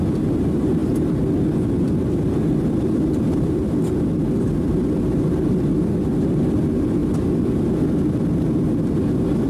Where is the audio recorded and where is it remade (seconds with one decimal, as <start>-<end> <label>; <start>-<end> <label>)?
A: 0.0-0.8 remade; 0.8-5.6 recorded; 5.6-7.0 remade; 7.0-8.8 recorded; 8.8-9.5 remade